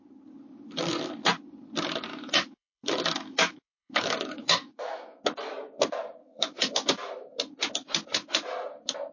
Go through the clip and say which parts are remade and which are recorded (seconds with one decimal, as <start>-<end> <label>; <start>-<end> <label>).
0.0-2.1 recorded; 2.1-5.2 remade; 5.2-6.2 recorded; 6.2-6.9 remade; 6.9-9.1 recorded